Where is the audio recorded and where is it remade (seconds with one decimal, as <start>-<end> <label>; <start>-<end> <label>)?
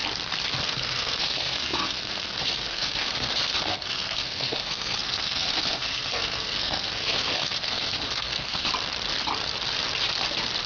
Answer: 0.0-0.6 recorded; 0.6-8.7 remade; 8.7-10.7 recorded